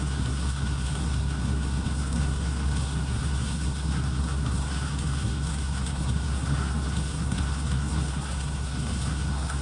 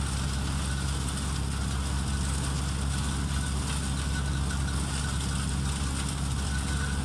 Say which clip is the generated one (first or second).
first